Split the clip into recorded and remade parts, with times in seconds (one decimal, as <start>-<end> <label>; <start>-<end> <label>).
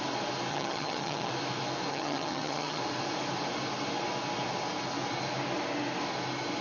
0.0-0.5 recorded; 0.5-1.3 remade; 1.3-1.9 recorded; 1.9-2.8 remade; 2.8-6.6 recorded